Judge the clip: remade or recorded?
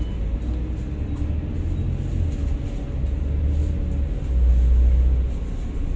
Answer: recorded